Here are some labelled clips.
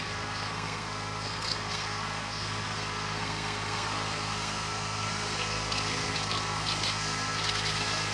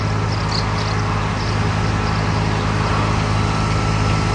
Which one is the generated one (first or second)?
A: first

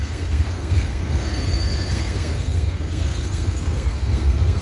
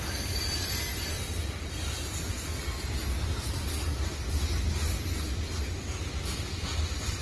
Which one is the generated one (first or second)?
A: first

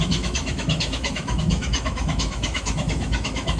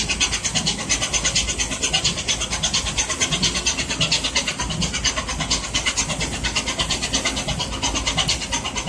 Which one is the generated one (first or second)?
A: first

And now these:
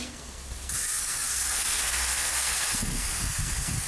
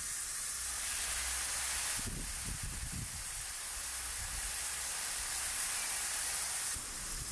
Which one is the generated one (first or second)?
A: first